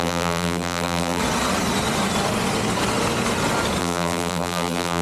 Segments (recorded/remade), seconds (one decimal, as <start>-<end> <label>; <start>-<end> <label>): 0.0-1.2 remade; 1.2-3.8 recorded; 3.8-5.0 remade